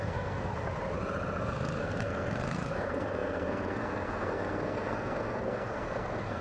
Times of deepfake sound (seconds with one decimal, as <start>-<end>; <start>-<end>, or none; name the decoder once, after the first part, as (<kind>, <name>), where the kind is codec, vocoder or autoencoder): 0.0-0.5 (codec, SNAC); 1.4-6.4